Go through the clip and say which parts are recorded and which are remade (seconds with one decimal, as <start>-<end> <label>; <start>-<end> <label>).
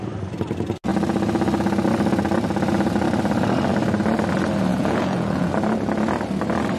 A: 0.0-4.7 recorded; 4.7-5.5 remade; 5.5-6.8 recorded